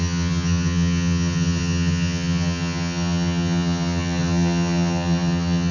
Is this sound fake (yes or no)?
yes